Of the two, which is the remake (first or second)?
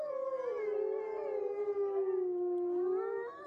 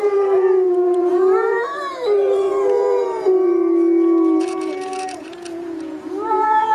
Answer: second